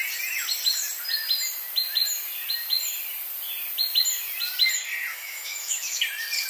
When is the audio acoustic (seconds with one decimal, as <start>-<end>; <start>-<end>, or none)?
0.0-5.1; 6.0-6.5